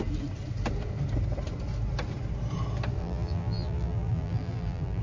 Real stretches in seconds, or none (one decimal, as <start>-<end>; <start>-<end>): 0.0-3.0